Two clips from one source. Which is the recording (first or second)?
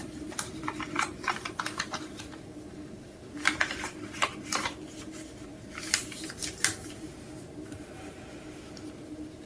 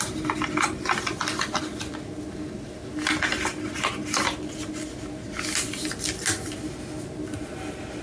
second